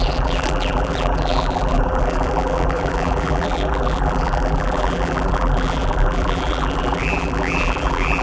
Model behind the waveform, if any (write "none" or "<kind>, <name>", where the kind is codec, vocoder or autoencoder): vocoder, BigVGAN v2